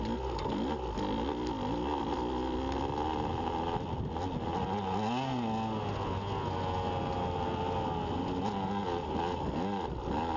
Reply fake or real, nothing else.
real